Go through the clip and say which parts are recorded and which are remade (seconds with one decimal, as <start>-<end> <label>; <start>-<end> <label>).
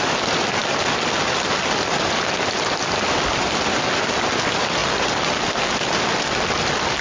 0.0-7.0 recorded